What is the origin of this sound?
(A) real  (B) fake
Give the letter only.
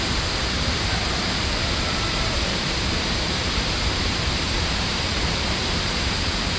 B